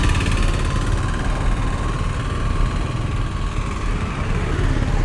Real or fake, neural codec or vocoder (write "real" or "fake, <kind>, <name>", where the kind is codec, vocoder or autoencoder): real